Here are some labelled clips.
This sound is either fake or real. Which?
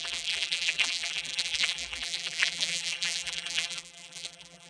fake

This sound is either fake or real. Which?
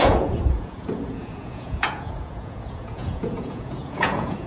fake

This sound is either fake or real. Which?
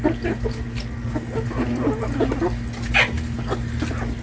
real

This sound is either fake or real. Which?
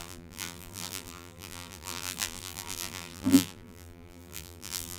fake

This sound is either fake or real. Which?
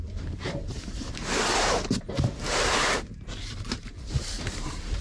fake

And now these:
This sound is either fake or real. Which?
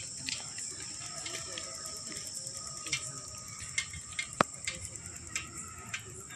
real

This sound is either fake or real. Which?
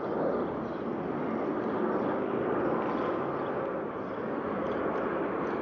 real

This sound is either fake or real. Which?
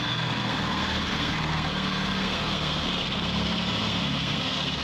fake